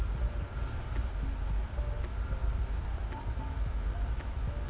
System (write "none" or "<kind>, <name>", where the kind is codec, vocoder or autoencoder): none